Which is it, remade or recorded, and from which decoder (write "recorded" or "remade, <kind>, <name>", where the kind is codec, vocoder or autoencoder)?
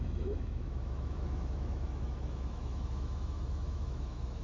remade, autoencoder, DAC-VAE